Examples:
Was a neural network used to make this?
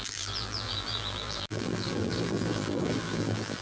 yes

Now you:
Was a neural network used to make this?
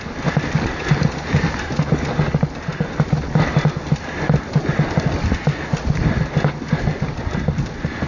no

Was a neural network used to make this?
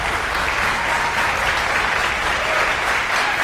yes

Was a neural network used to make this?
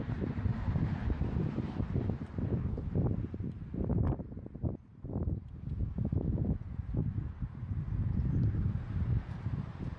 yes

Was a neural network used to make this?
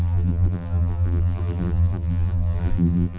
yes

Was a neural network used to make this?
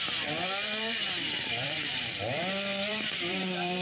yes